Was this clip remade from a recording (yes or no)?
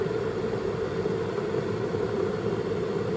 yes